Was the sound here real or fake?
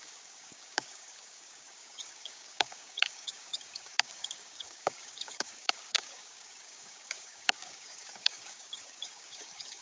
fake